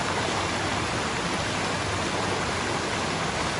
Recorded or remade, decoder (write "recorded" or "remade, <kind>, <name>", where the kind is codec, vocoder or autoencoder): recorded